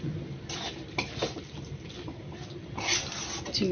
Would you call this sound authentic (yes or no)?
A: yes